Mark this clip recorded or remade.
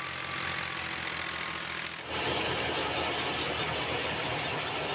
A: recorded